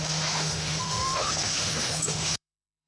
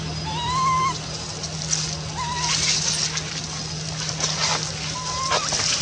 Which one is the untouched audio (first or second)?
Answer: second